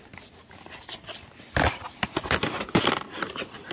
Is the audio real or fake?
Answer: real